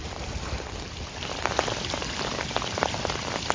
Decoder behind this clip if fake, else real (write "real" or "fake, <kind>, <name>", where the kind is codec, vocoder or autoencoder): real